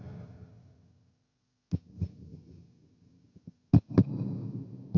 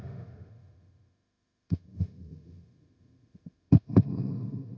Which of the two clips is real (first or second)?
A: first